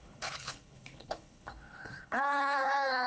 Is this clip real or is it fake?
fake